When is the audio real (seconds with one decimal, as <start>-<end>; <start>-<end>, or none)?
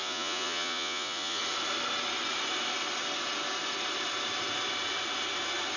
1.4-5.8